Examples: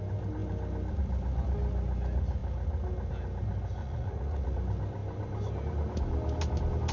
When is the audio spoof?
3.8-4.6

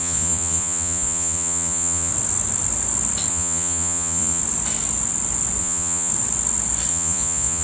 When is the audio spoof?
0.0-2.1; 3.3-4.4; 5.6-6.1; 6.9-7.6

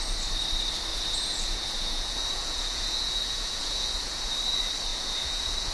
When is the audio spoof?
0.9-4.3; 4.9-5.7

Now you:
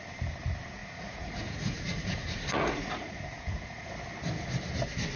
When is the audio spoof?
0.8-3.9

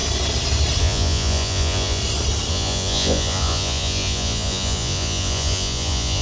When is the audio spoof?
0.8-2.0; 2.5-6.2

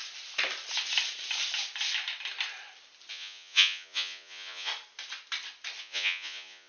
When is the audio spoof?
3.1-4.7; 5.8-6.7

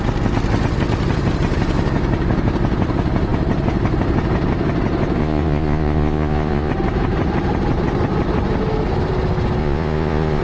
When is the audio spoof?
5.2-6.7; 9.6-10.4